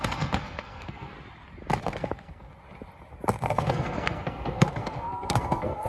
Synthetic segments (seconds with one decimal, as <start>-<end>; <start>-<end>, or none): 0.0-1.1; 1.8-2.5; 3.4-5.9